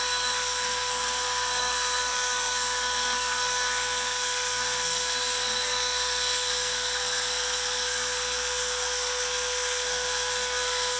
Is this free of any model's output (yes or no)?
no